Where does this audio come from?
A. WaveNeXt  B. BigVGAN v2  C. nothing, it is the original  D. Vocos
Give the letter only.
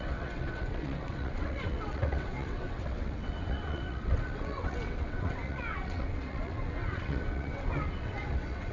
A